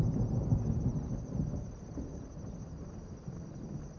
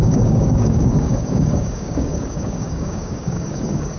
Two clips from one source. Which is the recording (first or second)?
first